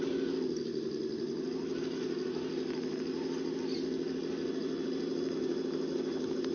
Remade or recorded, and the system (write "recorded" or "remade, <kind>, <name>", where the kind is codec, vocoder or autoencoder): recorded